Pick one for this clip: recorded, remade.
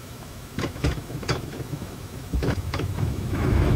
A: remade